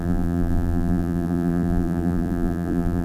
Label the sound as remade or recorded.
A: remade